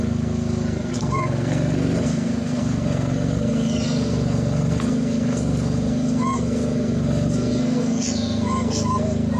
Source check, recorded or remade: remade